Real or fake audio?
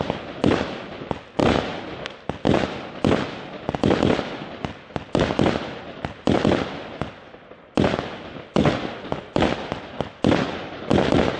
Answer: real